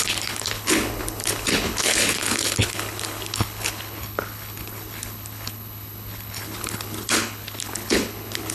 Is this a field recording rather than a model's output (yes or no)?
no